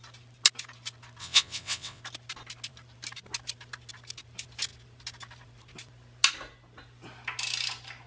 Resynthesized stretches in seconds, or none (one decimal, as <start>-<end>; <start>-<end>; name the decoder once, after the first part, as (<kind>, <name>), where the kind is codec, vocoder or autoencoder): 1.2-2.0 (vocoder, WaveNeXt)